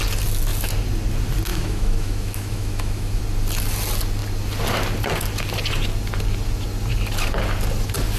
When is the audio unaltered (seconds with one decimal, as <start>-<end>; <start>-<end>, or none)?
0.0-1.5; 3.2-8.2

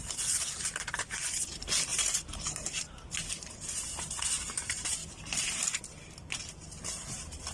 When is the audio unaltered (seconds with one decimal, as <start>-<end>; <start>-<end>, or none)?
3.1-4.4; 5.0-6.5

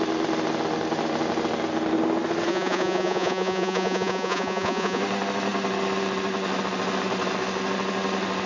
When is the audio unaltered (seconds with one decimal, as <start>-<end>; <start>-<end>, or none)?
0.0-2.5; 5.0-8.5

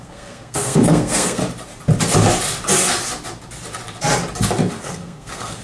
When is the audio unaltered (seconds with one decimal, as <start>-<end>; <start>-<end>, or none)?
1.4-4.8